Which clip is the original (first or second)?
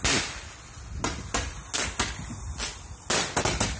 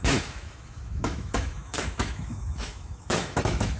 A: first